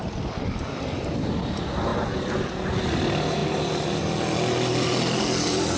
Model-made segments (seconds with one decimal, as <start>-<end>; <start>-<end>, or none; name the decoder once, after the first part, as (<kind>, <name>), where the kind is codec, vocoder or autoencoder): none